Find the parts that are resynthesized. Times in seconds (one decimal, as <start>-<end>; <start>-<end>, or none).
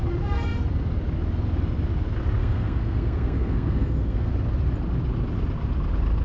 2.4-4.3